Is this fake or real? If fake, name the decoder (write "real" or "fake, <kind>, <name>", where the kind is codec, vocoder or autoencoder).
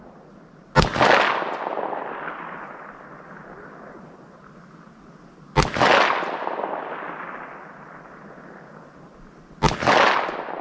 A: real